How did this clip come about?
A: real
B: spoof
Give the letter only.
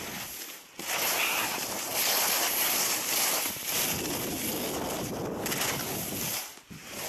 A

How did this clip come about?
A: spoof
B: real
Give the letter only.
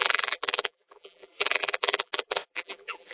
A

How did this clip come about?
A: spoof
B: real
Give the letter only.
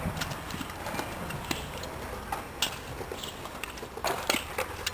B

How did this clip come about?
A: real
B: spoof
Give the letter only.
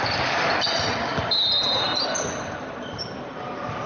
A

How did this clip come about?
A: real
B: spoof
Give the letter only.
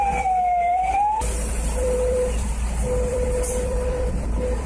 B